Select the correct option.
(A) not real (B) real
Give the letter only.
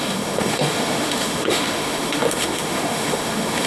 A